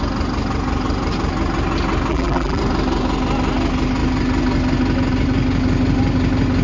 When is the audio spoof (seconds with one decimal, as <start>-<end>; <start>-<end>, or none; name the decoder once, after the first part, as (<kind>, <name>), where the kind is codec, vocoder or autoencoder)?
2.1-2.6 (vocoder, BigVGAN v2)